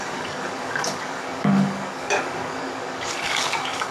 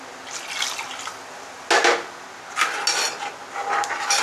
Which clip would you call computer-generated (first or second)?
first